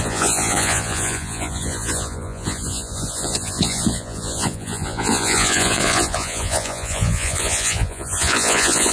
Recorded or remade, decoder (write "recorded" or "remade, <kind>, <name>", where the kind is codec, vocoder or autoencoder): remade, vocoder, Vocos